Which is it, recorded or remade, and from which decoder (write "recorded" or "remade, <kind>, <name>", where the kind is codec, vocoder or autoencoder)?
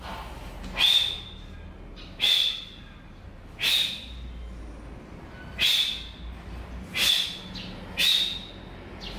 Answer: recorded